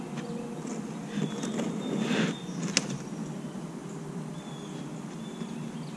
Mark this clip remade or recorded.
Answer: recorded